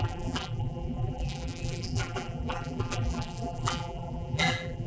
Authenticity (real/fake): fake